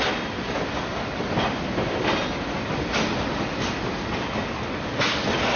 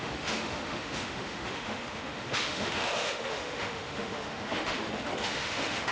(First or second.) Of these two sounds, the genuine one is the first